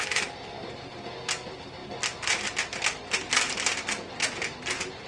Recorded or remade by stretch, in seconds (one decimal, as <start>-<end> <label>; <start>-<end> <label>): 0.0-5.1 recorded